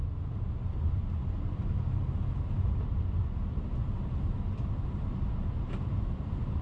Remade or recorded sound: recorded